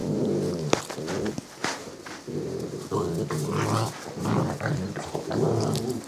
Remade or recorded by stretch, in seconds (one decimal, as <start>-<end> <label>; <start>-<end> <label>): 0.0-0.8 remade; 0.8-1.6 recorded; 1.6-5.3 remade; 5.3-6.1 recorded